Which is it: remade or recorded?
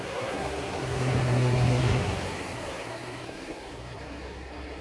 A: remade